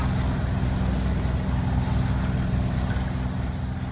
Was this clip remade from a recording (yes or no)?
no